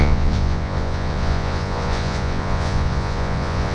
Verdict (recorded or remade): remade